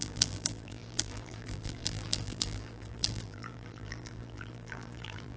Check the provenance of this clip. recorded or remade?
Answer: remade